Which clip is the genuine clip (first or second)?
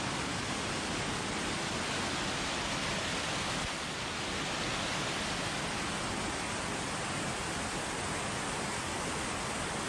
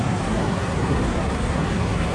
first